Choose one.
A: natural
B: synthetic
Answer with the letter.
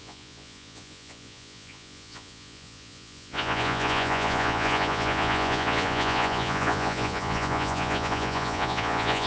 B